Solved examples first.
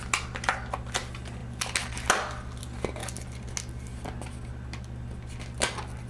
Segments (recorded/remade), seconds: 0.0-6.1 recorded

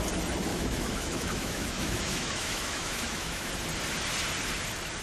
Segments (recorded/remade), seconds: 0.0-0.5 recorded; 0.5-3.5 remade; 3.5-5.0 recorded

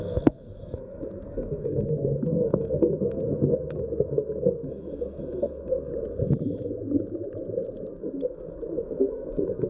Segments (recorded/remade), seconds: 0.0-5.9 remade; 5.9-7.9 recorded; 7.9-9.7 remade

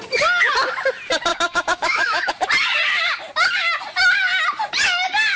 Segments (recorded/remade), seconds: 0.0-1.3 recorded; 1.3-2.3 remade; 2.3-5.4 recorded

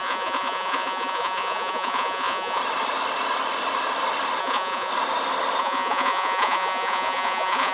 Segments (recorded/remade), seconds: 0.0-2.6 remade; 2.6-4.4 recorded; 4.4-4.9 remade; 4.9-5.6 recorded; 5.6-7.7 remade

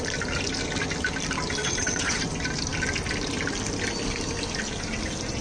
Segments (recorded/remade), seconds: 0.0-1.6 recorded; 1.6-2.2 remade; 2.2-5.4 recorded

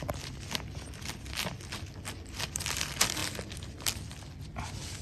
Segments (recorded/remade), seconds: 0.0-5.0 recorded